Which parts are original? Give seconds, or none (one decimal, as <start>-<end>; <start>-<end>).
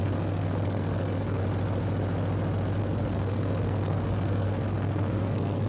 1.4-2.8